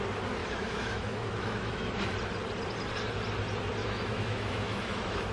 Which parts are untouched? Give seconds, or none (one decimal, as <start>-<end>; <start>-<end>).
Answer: 0.0-0.4; 2.1-3.8